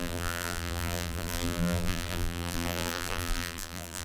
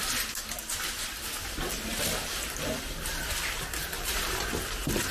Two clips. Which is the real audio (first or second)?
second